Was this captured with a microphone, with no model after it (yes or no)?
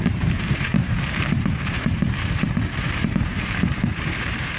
no